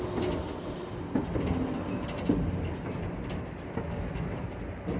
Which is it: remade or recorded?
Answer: recorded